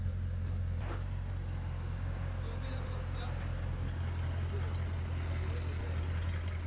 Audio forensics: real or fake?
real